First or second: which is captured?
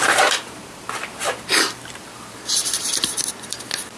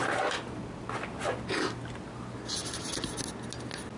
second